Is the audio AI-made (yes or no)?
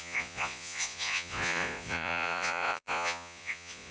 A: yes